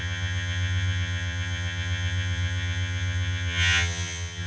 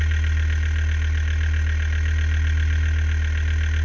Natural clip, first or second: second